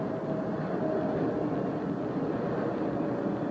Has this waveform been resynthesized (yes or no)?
no